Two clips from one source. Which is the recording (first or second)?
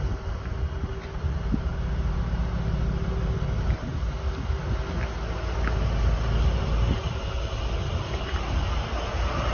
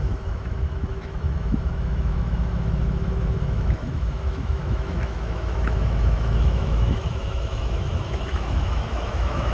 first